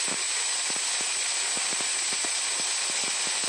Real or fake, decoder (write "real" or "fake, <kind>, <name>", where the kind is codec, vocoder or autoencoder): real